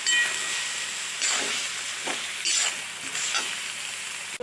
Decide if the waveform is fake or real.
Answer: real